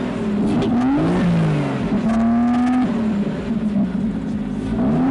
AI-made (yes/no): no